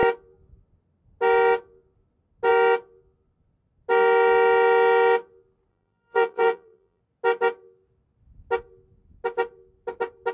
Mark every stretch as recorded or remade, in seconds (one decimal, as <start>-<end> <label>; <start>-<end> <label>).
0.0-5.7 recorded; 5.7-7.0 remade; 7.0-10.3 recorded